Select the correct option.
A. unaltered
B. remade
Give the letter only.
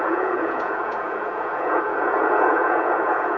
B